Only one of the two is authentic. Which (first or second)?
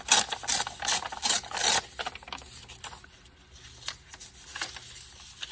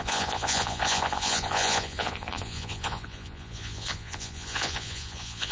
first